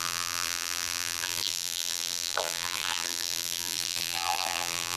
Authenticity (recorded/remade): remade